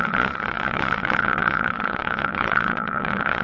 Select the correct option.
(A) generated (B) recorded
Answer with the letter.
A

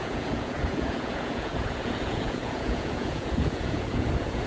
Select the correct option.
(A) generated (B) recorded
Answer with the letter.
A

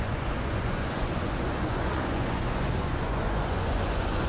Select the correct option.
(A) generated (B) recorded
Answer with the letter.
A